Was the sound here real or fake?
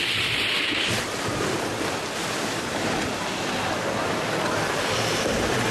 real